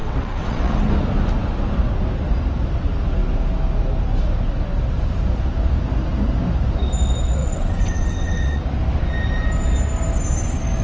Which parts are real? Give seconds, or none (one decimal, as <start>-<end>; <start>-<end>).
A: 0.9-7.4; 8.6-10.8